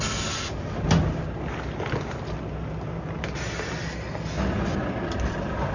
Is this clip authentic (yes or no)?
yes